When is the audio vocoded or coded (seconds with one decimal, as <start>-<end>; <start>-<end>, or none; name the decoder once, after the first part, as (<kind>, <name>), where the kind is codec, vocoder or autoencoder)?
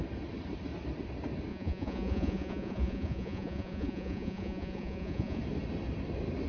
1.5-5.4 (vocoder, Vocos)